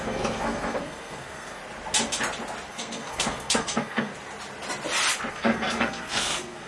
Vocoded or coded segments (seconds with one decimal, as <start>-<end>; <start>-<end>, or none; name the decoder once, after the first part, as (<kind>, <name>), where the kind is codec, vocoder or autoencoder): 0.0-1.6 (codec, SNAC); 2.7-4.1; 5.3-6.7